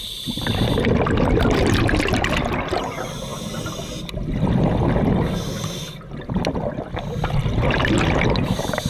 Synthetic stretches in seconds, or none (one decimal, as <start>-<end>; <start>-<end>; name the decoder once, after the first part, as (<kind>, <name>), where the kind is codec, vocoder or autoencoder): none